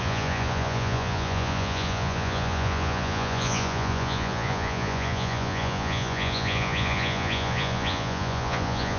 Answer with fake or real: fake